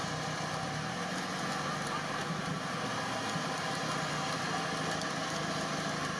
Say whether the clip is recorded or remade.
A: recorded